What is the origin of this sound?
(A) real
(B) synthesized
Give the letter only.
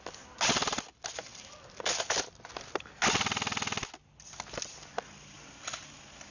A